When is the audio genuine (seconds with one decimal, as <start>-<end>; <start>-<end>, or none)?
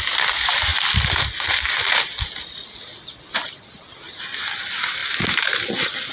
0.0-6.1